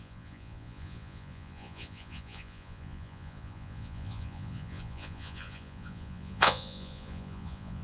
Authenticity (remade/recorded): remade